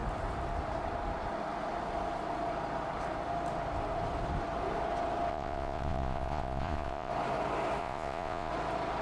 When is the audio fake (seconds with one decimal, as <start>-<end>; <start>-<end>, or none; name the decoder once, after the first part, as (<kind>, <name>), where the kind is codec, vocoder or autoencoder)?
5.3-7.1 (vocoder, Vocos); 7.8-8.5